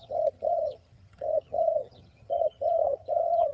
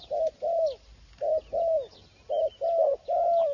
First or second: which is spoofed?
first